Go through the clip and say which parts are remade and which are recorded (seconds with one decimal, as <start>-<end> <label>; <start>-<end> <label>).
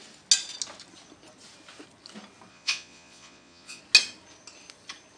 0.0-2.5 recorded; 2.5-3.8 remade; 3.8-5.2 recorded